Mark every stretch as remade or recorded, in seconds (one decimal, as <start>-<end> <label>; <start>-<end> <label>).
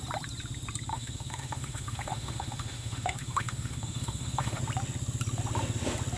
0.0-0.9 recorded; 0.9-4.6 remade; 4.6-6.2 recorded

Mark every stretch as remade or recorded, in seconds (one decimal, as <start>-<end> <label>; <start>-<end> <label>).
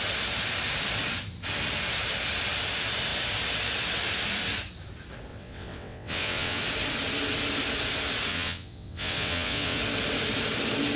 0.0-5.3 recorded; 5.3-6.6 remade; 6.6-8.3 recorded; 8.3-9.8 remade; 9.8-11.0 recorded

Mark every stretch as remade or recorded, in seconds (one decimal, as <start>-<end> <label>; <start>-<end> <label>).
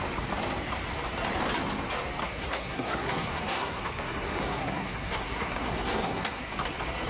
0.0-2.2 recorded; 2.2-6.5 remade; 6.5-7.1 recorded